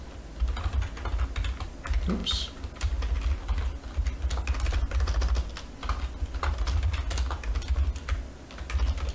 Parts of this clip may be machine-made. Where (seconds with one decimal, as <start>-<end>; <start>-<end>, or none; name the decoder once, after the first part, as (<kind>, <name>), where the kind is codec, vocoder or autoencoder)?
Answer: none